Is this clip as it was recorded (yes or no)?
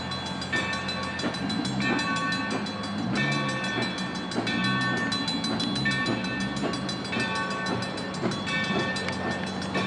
yes